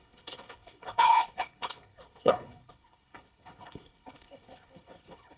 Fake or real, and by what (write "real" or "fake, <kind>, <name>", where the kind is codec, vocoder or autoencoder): fake, codec, HILCodec